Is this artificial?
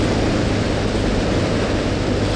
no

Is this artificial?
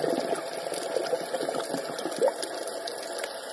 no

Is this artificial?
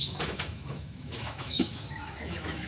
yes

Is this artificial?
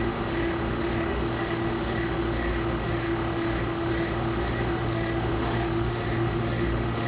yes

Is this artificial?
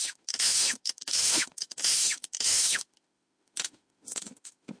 yes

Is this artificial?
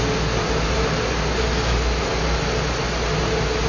no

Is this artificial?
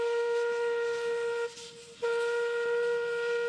no